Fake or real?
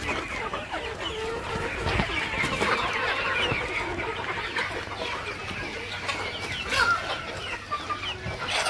real